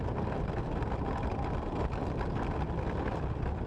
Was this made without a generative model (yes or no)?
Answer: yes